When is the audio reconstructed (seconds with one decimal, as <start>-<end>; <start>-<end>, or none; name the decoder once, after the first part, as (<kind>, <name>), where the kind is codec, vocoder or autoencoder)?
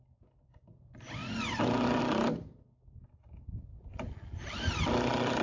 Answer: 0.0-1.2 (vocoder, BigVGAN v2); 2.0-5.4